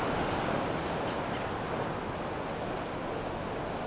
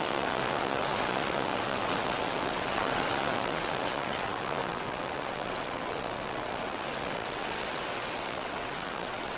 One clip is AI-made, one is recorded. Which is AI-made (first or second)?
second